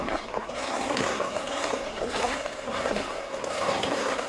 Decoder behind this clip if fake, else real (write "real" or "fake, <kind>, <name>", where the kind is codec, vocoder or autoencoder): fake, codec, SNAC